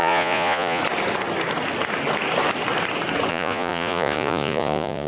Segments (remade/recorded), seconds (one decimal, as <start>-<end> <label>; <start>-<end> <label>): 0.0-0.8 remade; 0.8-3.3 recorded; 3.3-5.1 remade